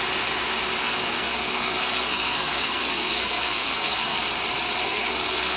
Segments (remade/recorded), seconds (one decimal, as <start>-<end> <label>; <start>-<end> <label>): 0.0-0.8 recorded; 0.8-4.2 remade; 4.2-4.8 recorded; 4.8-5.6 remade

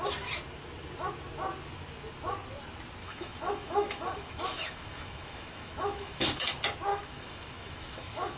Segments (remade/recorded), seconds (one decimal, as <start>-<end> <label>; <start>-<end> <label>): 0.0-3.0 recorded; 3.0-6.5 remade; 6.5-6.9 recorded; 6.9-8.4 remade

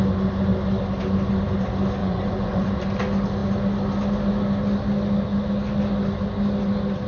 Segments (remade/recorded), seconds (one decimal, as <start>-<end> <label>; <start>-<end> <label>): 0.0-2.0 recorded; 2.0-2.8 remade; 2.8-7.1 recorded

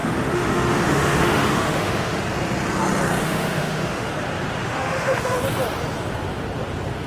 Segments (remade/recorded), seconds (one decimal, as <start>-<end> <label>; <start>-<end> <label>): 0.0-2.2 remade; 2.2-3.2 recorded; 3.2-4.1 remade; 4.1-4.6 recorded; 4.6-5.4 remade; 5.4-7.1 recorded

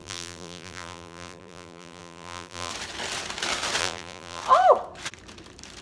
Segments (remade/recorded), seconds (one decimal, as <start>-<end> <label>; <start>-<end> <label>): 0.0-2.7 remade; 2.7-3.8 recorded; 3.8-4.4 remade; 4.4-5.8 recorded

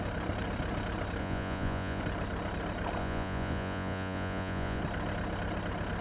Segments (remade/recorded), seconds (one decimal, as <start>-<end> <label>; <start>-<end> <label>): 0.0-1.2 recorded; 1.2-2.0 remade; 2.0-3.0 recorded; 3.0-4.8 remade; 4.8-6.0 recorded